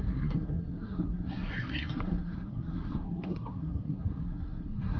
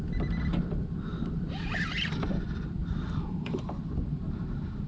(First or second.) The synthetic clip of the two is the first